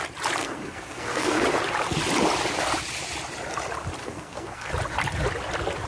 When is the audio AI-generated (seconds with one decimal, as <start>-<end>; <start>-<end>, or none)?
0.4-1.4; 4.0-4.7